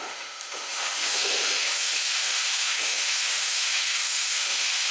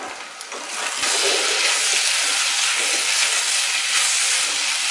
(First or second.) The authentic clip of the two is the second